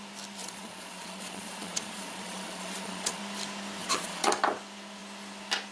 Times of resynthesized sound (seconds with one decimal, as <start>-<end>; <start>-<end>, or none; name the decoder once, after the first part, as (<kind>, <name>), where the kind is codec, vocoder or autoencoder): 0.4-3.2 (vocoder, Vocos); 3.8-4.3